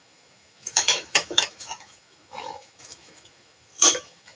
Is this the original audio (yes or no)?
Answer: no